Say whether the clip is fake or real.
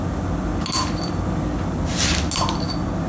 real